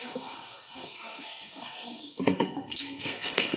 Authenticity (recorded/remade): remade